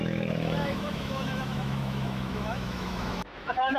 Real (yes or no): no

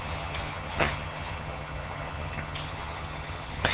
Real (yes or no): no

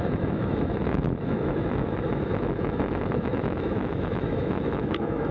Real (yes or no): no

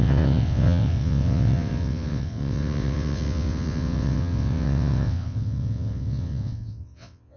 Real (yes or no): no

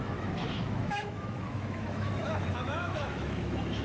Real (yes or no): no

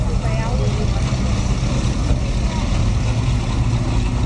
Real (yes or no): yes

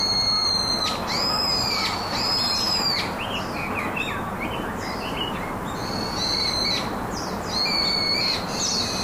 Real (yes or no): yes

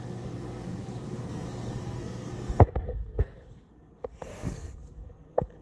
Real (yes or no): no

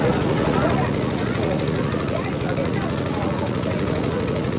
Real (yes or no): no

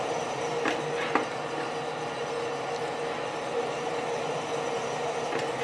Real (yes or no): yes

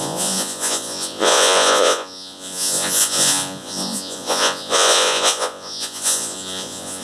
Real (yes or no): no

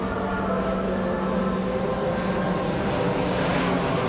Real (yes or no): yes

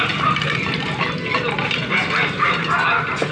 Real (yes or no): yes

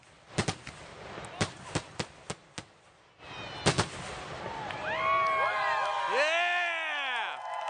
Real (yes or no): yes